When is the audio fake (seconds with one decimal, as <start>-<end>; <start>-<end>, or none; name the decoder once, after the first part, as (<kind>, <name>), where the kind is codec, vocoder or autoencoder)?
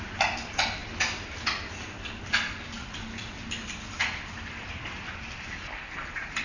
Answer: none